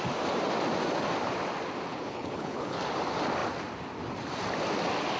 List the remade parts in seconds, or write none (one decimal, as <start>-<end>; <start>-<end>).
1.9-2.8